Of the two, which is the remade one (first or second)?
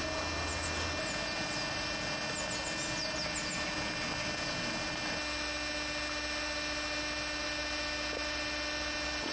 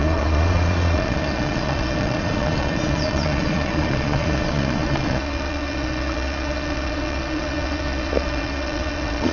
second